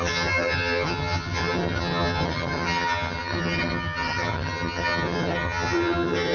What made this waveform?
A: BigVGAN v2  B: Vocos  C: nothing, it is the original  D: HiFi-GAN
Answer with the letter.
D